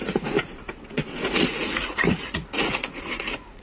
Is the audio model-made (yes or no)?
yes